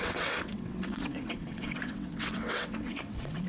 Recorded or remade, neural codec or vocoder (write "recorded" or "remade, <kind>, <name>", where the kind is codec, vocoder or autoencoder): remade, vocoder, WaveNeXt